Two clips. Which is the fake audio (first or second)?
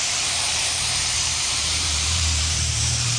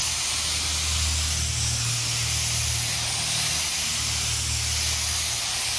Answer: first